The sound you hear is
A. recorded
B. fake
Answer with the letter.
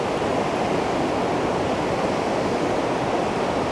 A